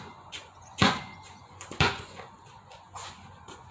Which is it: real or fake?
fake